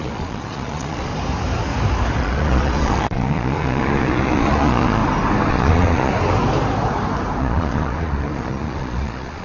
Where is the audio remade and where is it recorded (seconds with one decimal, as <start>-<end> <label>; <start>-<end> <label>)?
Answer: 0.0-1.1 remade; 1.1-2.2 recorded; 2.2-5.0 remade; 5.0-5.5 recorded; 5.5-6.1 remade; 6.1-7.4 recorded; 7.4-9.4 remade